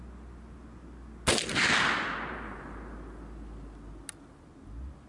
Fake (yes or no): no